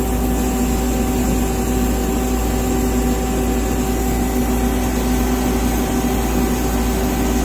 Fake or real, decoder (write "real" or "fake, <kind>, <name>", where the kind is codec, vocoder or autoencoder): real